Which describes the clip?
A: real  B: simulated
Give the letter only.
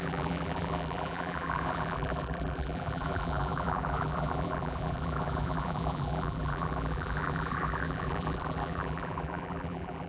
B